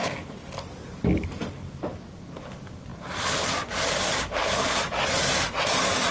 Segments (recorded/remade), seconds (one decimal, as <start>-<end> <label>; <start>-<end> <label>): 0.0-6.1 recorded